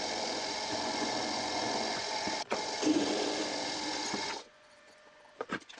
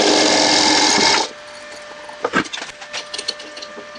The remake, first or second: first